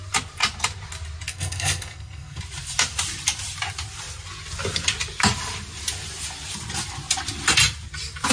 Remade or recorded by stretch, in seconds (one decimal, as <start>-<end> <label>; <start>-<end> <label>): 0.0-1.3 recorded; 1.3-2.4 remade; 2.4-8.3 recorded